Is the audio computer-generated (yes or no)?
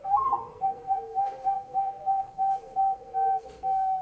yes